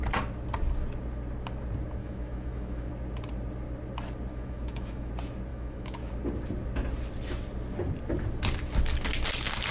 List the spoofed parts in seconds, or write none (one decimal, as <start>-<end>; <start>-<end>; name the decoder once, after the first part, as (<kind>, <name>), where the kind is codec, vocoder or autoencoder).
2.0-2.9 (autoencoder, DAC-VAE); 4.3-5.1; 5.5-6.1